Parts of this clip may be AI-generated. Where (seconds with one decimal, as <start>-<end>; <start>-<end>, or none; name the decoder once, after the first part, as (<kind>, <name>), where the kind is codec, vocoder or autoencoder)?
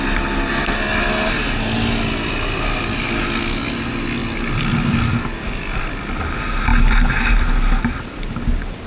none